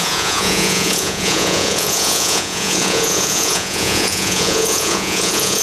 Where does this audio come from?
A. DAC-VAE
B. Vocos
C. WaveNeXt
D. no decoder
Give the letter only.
B